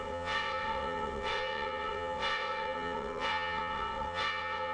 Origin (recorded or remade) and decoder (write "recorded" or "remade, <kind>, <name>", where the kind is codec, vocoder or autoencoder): remade, vocoder, WaveNeXt